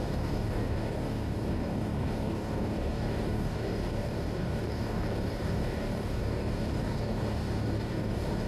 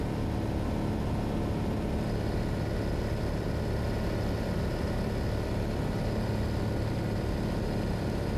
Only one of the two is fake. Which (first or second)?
first